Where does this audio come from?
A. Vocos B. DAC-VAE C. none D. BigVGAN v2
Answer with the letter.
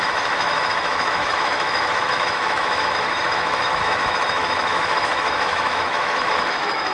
B